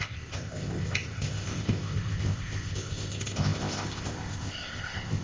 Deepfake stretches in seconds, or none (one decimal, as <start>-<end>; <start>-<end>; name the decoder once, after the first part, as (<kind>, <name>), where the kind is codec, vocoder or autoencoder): 0.0-5.2 (codec, ZipCodec)